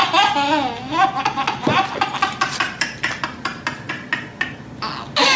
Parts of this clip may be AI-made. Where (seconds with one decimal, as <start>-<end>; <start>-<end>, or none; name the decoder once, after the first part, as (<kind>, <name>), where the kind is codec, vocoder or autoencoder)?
none